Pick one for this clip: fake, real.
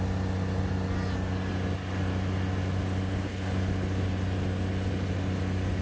real